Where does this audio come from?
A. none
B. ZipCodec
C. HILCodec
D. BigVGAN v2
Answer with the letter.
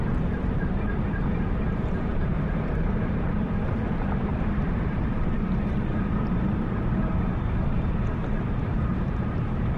D